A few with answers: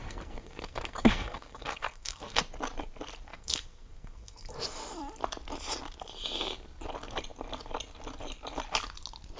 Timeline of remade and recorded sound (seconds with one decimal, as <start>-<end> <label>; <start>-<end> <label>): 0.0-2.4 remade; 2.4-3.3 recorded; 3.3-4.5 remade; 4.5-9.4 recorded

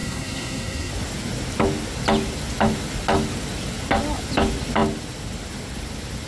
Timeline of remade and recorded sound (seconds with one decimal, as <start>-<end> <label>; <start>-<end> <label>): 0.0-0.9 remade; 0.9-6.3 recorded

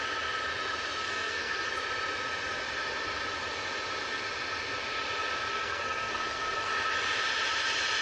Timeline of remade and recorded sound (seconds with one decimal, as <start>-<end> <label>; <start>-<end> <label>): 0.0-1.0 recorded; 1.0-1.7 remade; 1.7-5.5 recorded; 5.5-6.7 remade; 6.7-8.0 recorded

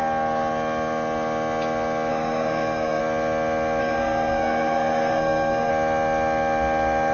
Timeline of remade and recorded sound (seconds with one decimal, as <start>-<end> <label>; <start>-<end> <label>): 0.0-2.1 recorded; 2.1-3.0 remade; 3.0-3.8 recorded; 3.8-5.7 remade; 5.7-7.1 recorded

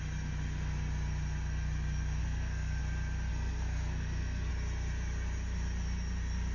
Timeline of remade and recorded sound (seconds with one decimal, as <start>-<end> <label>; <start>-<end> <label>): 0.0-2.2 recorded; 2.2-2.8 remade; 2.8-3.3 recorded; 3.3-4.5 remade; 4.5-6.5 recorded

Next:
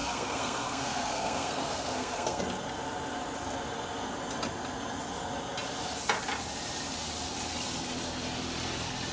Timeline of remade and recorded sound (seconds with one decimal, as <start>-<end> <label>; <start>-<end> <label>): 0.0-2.4 remade; 2.4-9.1 recorded

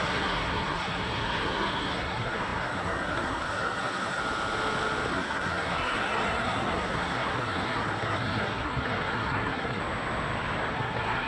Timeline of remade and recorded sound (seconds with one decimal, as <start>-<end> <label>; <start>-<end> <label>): 0.0-4.2 remade; 4.2-5.1 recorded; 5.1-9.8 remade; 9.8-10.7 recorded; 10.7-11.3 remade

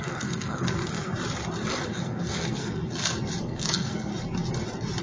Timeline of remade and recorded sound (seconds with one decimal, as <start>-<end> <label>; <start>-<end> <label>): 0.0-1.1 remade; 1.1-1.9 recorded; 1.9-2.8 remade; 2.8-3.4 recorded; 3.4-4.1 remade; 4.1-5.0 recorded